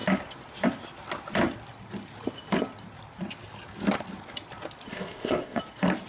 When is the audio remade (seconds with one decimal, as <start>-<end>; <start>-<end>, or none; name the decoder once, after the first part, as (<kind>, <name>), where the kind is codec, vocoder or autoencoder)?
4.9-5.6 (codec, ZipCodec)